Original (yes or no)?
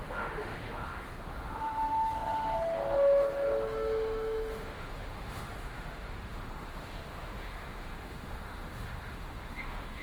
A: no